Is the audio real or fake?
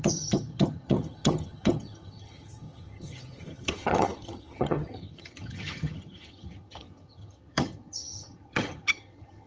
fake